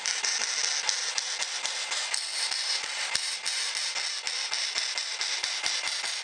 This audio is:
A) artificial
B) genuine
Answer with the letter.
B